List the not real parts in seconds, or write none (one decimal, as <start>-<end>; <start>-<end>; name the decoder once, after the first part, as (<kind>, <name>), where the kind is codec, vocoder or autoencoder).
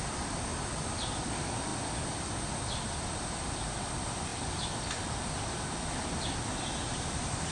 none